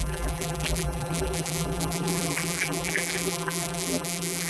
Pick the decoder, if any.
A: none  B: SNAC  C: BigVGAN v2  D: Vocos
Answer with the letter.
C